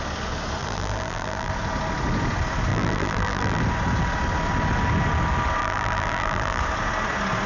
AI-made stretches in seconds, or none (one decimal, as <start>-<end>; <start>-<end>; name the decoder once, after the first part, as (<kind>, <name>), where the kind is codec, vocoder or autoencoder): 0.6-1.5 (vocoder, BigVGAN v2); 2.7-3.6; 5.6-6.6